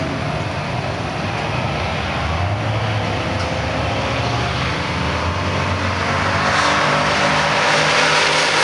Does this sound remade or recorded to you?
recorded